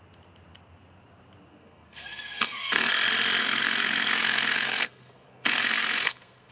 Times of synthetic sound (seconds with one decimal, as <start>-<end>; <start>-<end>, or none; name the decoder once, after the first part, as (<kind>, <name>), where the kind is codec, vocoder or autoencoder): 1.5-2.9 (codec, SNAC); 3.4-6.5